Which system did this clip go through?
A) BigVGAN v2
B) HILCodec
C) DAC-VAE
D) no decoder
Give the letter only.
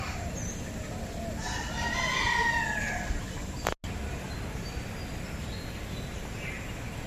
D